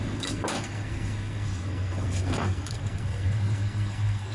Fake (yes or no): yes